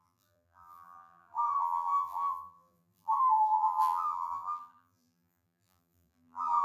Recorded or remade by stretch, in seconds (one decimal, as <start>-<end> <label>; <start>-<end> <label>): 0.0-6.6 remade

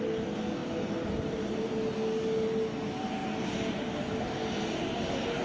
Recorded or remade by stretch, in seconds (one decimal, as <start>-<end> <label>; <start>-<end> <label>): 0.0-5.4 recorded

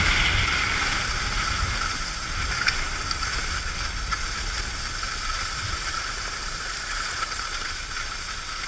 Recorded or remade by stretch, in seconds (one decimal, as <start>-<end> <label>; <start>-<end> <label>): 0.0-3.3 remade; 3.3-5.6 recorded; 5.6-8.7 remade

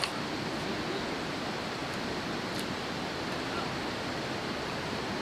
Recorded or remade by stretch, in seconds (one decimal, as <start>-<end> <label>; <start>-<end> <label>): 0.0-1.8 recorded; 1.8-5.2 remade